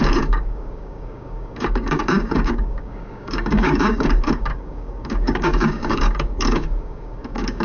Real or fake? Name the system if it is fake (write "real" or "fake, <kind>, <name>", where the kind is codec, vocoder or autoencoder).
fake, codec, DAC